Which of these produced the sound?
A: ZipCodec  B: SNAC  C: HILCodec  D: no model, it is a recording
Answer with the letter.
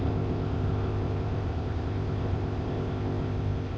A